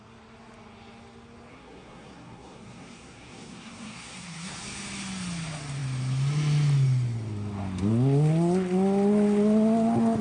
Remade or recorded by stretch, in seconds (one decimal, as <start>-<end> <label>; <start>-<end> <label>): 0.0-1.5 recorded; 1.5-4.5 remade; 4.5-10.2 recorded